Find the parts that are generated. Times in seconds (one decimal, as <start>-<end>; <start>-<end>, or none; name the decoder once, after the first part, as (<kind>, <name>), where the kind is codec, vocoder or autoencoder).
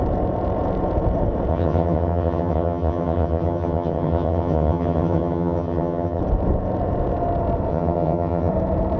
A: 1.5-6.2 (vocoder, HiFi-GAN); 7.7-8.5